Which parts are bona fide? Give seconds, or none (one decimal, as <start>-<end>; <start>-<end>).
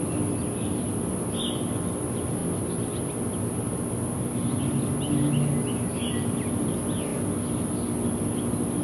0.0-8.8